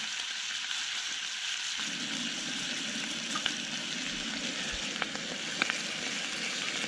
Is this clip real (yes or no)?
yes